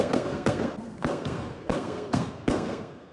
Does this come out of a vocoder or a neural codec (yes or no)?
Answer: yes